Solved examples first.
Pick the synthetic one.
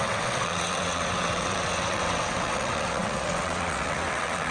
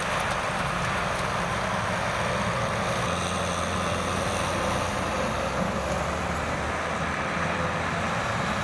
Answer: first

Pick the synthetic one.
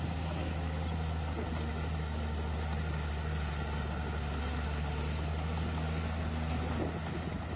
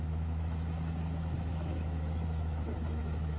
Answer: second